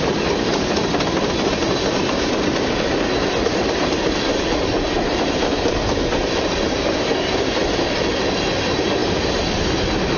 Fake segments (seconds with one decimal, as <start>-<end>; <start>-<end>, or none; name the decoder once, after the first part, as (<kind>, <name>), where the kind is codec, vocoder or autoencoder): none